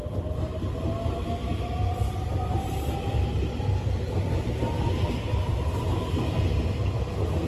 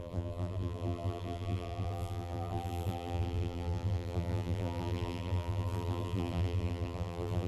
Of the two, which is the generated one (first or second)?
second